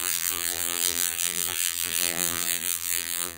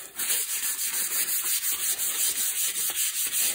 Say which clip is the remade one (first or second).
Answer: first